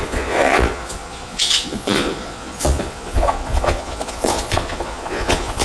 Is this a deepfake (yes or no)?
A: yes